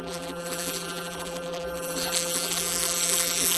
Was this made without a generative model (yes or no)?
no